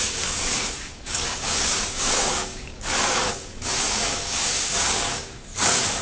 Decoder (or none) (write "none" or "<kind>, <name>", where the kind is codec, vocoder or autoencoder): codec, DAC